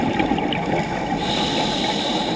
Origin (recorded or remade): recorded